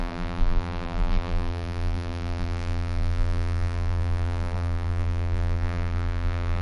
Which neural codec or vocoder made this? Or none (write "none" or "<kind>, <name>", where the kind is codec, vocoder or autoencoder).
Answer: vocoder, BigVGAN v2